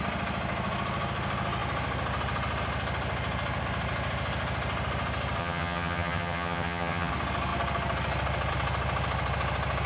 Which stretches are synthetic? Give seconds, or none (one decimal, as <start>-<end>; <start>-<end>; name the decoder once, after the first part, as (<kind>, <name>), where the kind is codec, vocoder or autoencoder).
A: 5.4-7.1 (vocoder, HiFi-GAN)